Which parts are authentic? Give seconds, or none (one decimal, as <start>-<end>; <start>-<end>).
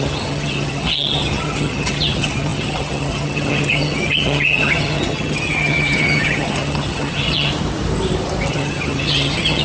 7.5-8.5